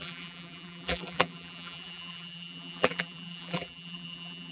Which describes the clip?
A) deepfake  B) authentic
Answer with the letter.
A